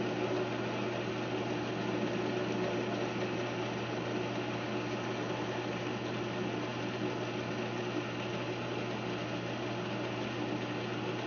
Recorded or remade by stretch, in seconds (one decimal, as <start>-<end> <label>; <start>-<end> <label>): 0.0-11.3 recorded